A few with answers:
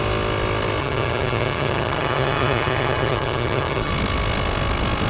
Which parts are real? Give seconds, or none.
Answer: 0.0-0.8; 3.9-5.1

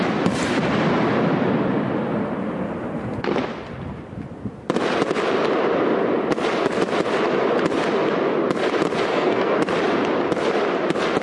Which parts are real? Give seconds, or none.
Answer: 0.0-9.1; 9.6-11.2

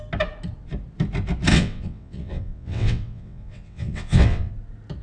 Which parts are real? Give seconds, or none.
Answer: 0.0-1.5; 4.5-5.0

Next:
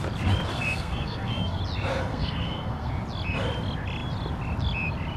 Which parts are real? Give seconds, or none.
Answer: 0.0-0.5; 1.6-2.1; 2.9-5.2